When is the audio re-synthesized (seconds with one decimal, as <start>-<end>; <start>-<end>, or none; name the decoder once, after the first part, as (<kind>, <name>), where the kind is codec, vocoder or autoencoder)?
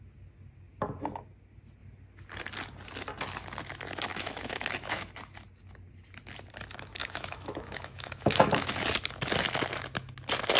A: 4.1-5.1 (autoencoder, DAC-VAE); 7.0-8.8